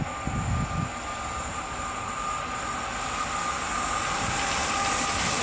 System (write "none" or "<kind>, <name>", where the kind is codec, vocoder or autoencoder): none